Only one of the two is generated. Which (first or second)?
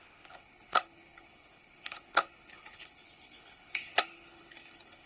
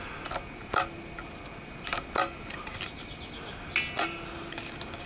first